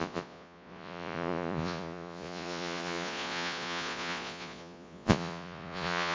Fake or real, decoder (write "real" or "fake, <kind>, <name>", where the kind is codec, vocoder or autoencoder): fake, vocoder, Vocos